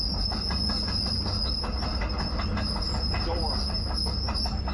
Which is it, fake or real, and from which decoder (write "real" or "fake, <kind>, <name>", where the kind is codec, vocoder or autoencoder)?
real